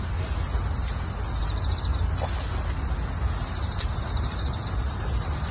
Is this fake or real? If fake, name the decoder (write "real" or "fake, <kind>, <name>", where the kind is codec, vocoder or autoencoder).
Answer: real